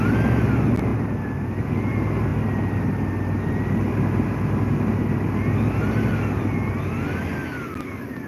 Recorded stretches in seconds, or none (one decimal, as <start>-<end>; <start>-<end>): 0.0-8.3